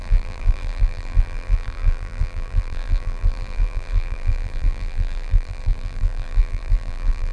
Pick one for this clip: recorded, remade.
remade